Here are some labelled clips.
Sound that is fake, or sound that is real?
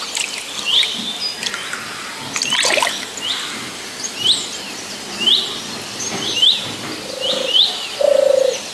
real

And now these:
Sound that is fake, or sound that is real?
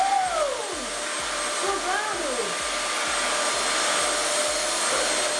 real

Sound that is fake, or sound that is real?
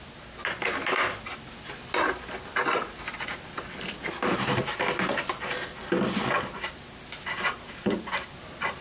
real